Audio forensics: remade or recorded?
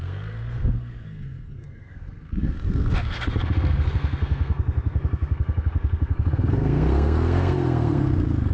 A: remade